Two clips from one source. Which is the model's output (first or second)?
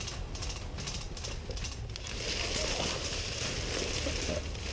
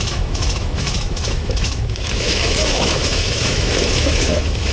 second